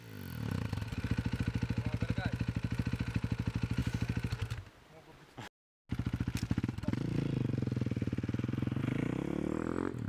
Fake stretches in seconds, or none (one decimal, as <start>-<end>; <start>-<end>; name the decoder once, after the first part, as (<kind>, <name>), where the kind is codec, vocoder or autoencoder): none